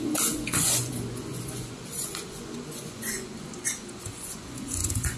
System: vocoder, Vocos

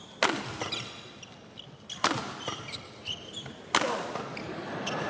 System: none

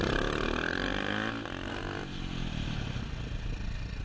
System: none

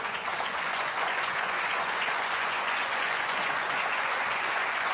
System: vocoder, Vocos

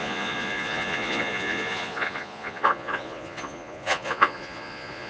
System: vocoder, Vocos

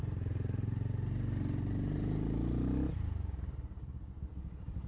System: none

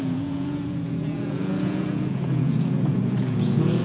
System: vocoder, Vocos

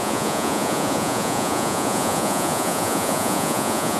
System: vocoder, Vocos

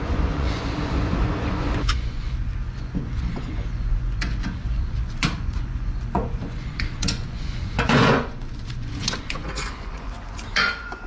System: vocoder, Vocos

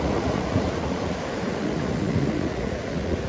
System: vocoder, Vocos